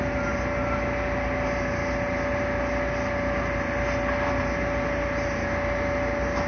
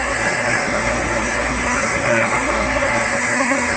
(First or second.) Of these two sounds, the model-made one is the second